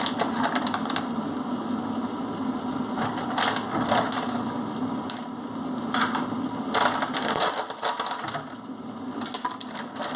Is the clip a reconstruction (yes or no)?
no